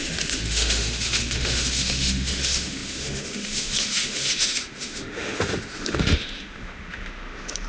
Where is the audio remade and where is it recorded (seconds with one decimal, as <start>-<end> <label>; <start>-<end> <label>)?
0.0-7.7 remade